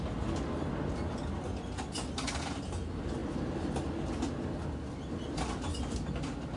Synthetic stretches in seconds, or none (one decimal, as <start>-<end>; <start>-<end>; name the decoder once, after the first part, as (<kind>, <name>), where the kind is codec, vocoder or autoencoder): none